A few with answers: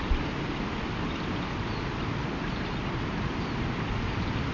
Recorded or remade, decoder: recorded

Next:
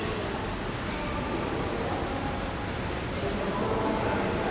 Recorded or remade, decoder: recorded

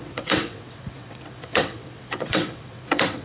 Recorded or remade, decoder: remade, vocoder, WaveNeXt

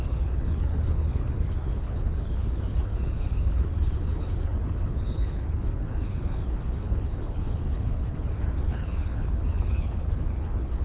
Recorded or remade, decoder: remade, codec, HILCodec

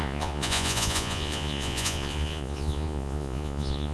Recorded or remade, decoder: remade, vocoder, Vocos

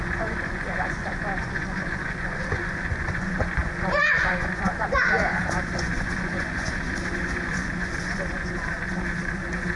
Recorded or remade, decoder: remade, vocoder, Vocos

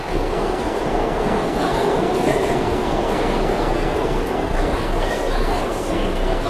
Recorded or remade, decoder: remade, codec, SNAC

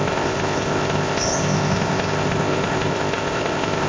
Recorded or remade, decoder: remade, codec, ZipCodec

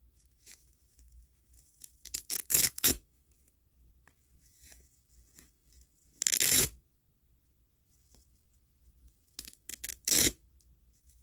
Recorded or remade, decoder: remade, autoencoder, DAC-VAE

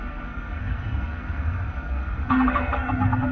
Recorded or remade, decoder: remade, codec, SNAC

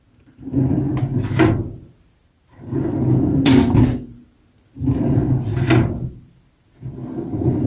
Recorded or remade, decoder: recorded